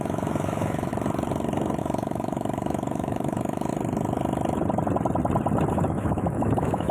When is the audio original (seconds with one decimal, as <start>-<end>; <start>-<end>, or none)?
0.9-1.8; 3.7-5.7